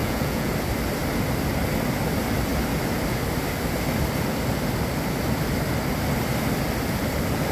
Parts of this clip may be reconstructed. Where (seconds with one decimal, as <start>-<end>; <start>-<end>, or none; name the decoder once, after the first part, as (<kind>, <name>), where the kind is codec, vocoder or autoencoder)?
0.0-0.5 (vocoder, Vocos)